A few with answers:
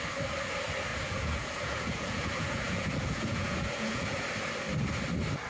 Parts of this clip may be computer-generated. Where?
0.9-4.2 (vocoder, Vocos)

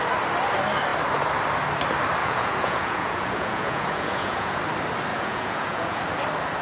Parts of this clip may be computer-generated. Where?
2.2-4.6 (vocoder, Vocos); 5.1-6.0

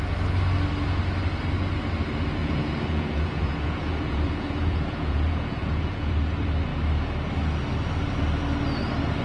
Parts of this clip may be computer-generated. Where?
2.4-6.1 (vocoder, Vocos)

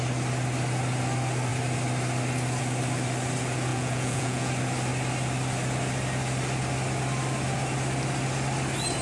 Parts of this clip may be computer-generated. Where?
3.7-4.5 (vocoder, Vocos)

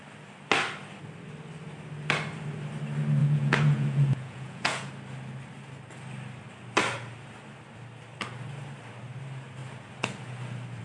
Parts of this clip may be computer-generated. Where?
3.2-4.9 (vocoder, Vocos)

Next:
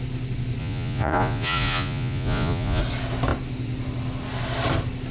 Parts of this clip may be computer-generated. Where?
0.6-2.8 (vocoder, Vocos)

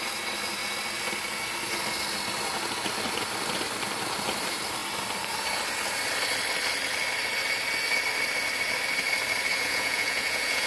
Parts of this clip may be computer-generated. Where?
9.5-10.7 (vocoder, Vocos)